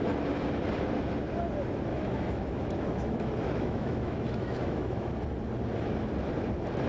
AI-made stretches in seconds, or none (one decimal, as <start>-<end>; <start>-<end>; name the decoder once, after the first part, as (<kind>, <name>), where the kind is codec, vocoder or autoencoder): 1.9-5.1 (autoencoder, DAC-VAE)

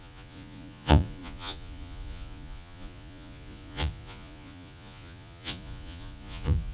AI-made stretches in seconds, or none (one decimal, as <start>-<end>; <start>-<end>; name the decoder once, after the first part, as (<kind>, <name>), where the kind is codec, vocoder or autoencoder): 0.0-6.7 (vocoder, Vocos)

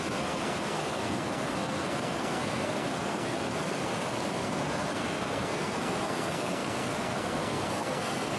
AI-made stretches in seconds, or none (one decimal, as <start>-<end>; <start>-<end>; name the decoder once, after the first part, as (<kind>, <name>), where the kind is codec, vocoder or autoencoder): 0.0-8.4 (codec, SNAC)

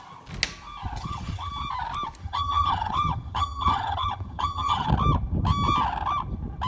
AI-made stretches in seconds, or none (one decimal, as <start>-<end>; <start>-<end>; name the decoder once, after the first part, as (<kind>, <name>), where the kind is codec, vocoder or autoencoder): 1.0-1.5 (vocoder, HiFi-GAN); 2.2-4.9

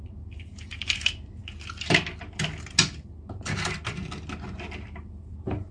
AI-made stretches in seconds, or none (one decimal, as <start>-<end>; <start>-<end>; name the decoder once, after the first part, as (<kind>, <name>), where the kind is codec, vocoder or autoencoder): 0.0-1.4 (vocoder, BigVGAN v2); 4.8-5.7

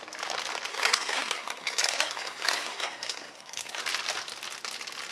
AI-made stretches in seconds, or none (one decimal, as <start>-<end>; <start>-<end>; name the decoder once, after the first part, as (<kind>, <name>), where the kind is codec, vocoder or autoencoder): 0.7-3.8 (codec, SNAC)

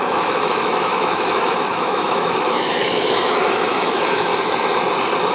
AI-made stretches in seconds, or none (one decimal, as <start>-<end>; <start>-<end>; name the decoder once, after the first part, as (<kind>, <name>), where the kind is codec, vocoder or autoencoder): 0.0-4.3 (autoencoder, DAC-VAE)

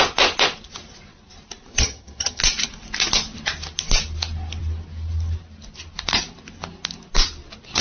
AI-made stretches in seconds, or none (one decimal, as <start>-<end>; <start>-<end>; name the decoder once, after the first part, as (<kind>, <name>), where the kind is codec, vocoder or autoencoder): 1.7-2.4 (vocoder, HiFi-GAN)